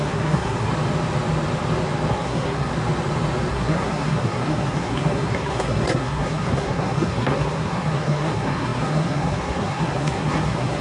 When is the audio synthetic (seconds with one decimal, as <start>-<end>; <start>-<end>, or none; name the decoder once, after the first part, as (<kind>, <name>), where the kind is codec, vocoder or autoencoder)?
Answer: 0.0-0.7 (codec, SNAC); 2.1-2.7; 3.5-10.8